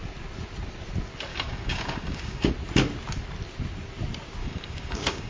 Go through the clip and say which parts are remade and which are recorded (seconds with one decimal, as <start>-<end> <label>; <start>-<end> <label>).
0.0-1.3 recorded; 1.3-2.5 remade; 2.5-4.4 recorded; 4.4-5.3 remade